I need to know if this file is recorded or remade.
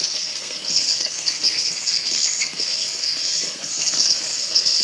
remade